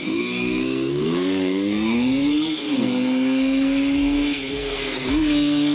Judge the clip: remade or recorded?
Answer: remade